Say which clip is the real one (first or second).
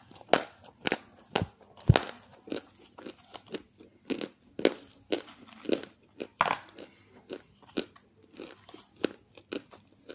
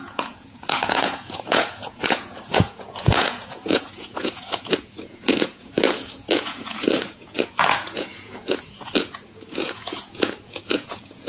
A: first